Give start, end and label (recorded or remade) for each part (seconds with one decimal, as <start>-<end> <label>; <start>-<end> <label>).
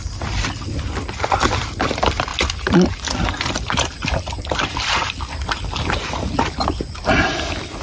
0.0-7.8 recorded